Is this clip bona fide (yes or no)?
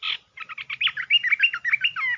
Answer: yes